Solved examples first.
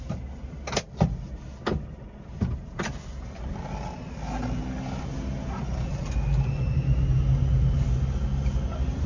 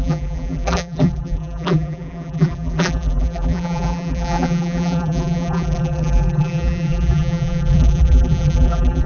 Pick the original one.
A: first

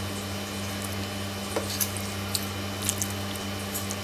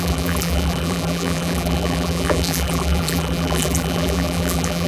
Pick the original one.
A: first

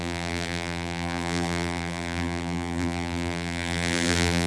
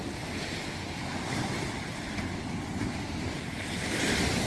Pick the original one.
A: second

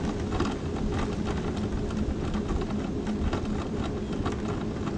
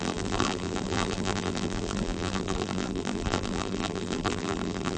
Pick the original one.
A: first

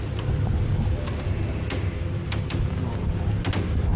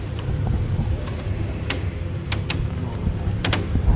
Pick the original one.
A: first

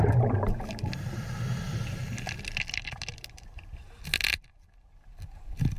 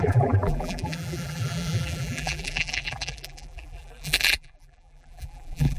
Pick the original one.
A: first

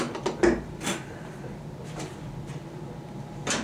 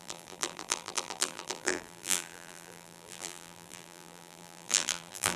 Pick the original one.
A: first